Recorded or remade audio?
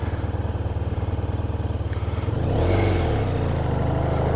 recorded